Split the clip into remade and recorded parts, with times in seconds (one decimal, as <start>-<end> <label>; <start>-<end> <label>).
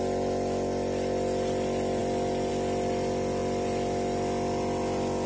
0.0-5.3 recorded